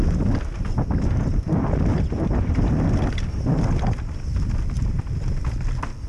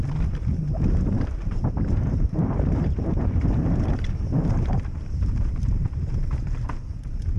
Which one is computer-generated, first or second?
second